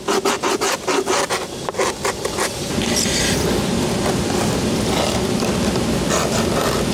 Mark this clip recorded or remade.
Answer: recorded